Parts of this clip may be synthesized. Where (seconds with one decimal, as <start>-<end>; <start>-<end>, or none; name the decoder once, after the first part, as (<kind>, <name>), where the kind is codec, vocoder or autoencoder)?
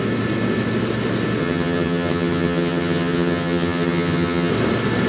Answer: 1.4-4.5 (vocoder, HiFi-GAN)